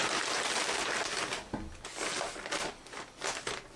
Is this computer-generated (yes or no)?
no